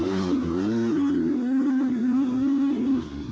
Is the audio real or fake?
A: fake